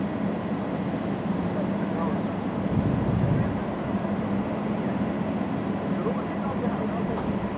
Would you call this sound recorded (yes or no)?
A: yes